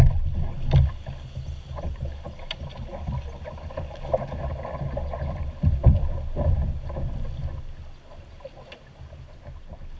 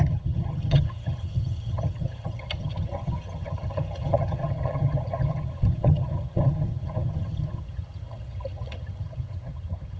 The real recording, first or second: first